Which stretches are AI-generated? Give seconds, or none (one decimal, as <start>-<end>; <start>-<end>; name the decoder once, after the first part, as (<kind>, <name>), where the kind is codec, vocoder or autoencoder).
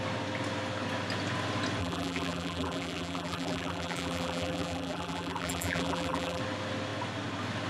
1.8-6.4 (vocoder, BigVGAN v2)